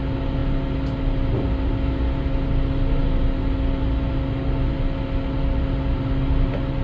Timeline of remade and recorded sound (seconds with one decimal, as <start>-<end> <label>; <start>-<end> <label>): 0.0-6.8 recorded

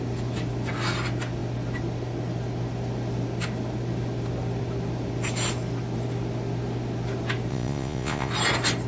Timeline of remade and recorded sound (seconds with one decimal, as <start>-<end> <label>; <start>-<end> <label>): 0.0-7.5 recorded; 7.5-8.3 remade; 8.3-8.9 recorded

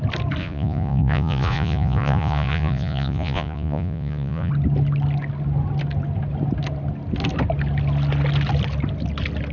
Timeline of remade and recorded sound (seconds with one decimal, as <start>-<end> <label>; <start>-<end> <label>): 0.0-0.4 recorded; 0.4-4.5 remade; 4.5-9.5 recorded

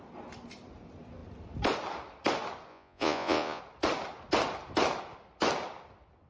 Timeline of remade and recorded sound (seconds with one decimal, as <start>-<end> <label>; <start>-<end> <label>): 0.0-2.7 recorded; 2.7-3.6 remade; 3.6-6.3 recorded

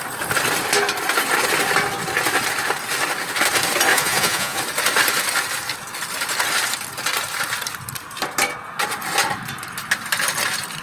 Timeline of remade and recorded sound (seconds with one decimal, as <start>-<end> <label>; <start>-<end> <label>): 0.0-3.9 recorded; 3.9-4.6 remade; 4.6-10.8 recorded

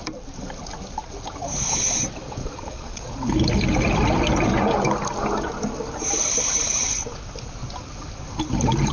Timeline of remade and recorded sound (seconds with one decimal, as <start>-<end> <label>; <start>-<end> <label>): 0.0-2.4 recorded; 2.4-3.1 remade; 3.1-8.9 recorded